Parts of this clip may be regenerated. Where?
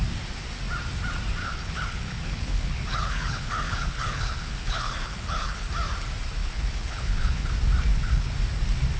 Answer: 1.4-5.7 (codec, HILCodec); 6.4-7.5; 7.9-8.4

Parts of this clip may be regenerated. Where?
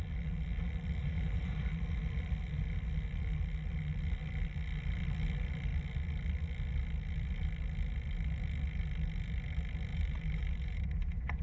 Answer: 1.0-1.6 (vocoder, BigVGAN v2); 9.9-11.4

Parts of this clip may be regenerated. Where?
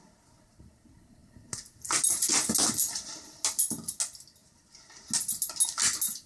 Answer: none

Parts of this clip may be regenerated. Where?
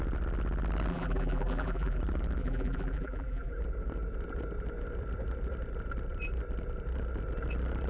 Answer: 0.9-2.0 (vocoder, BigVGAN v2); 2.4-3.5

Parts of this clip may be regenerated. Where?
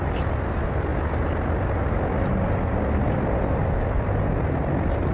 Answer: none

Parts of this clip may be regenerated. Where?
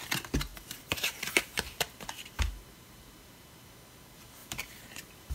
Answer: 0.5-3.7 (vocoder, BigVGAN v2); 4.4-5.3